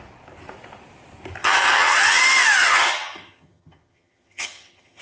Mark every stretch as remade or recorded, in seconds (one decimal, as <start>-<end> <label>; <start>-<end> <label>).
0.0-1.4 recorded; 1.4-2.2 remade; 2.2-2.6 recorded; 2.6-5.0 remade

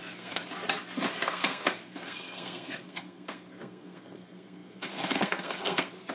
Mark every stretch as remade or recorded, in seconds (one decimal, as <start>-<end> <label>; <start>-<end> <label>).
0.0-0.4 remade; 0.4-1.3 recorded; 1.3-6.1 remade

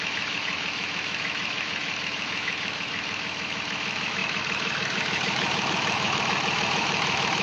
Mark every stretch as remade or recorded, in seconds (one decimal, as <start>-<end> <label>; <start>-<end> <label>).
0.0-7.4 remade

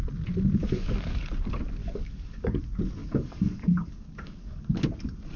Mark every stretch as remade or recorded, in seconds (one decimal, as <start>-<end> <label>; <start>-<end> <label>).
0.0-0.6 recorded; 0.6-1.2 remade; 1.2-1.8 recorded; 1.8-2.6 remade; 2.6-3.0 recorded; 3.0-4.6 remade; 4.6-5.4 recorded

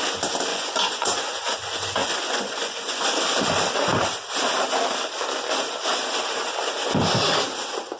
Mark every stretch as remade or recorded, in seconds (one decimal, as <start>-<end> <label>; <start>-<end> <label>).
0.0-0.5 recorded; 0.5-1.6 remade; 1.6-2.0 recorded; 2.0-3.0 remade; 3.0-8.0 recorded

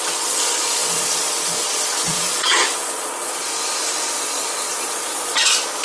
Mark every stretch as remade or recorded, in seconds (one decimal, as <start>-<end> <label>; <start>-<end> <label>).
0.0-3.5 remade; 3.5-4.1 recorded; 4.1-5.8 remade

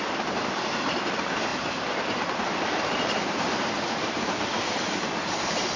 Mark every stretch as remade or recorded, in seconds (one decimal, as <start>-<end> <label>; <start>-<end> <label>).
0.0-5.8 remade

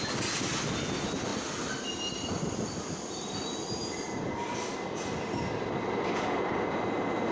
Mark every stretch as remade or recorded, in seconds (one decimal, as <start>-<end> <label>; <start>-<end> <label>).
0.0-7.3 recorded